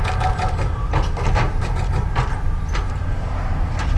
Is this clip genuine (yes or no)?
yes